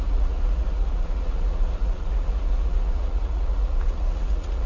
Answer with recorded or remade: remade